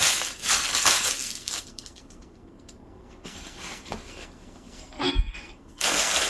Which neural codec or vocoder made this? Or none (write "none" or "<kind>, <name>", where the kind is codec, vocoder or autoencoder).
codec, SNAC